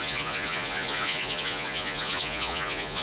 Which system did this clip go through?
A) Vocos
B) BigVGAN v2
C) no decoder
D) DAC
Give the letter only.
A